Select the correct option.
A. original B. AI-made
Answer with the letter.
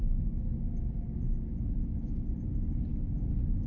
A